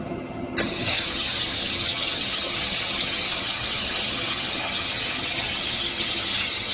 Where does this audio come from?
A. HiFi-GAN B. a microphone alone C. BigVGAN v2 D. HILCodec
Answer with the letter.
A